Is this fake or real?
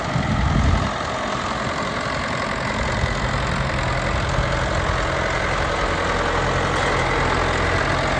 real